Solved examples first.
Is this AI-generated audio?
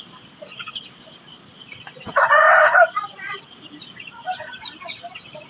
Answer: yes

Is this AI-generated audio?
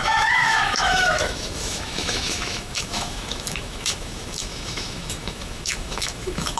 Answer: yes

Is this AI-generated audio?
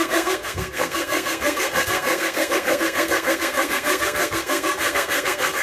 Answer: yes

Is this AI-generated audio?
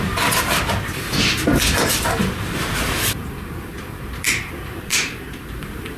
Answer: yes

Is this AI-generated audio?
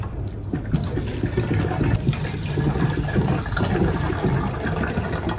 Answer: no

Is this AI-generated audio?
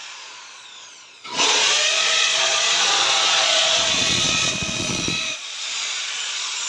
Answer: yes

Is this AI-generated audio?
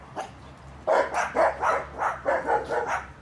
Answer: no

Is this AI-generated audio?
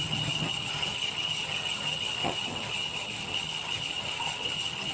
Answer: yes